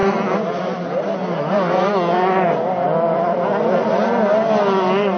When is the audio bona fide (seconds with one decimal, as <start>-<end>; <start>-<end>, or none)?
0.0-5.2